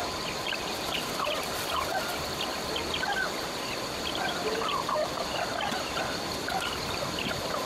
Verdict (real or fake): real